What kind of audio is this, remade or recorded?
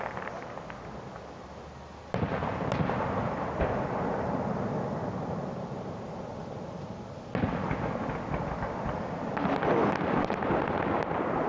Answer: recorded